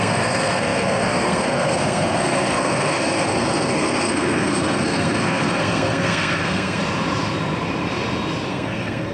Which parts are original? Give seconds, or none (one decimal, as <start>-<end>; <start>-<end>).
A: 6.8-8.5